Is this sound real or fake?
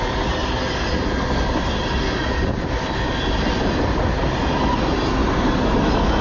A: real